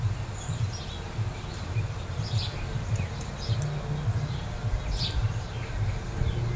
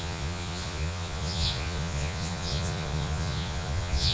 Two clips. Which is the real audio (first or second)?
first